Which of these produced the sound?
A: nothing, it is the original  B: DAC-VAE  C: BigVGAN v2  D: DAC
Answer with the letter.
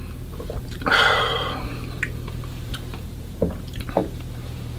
C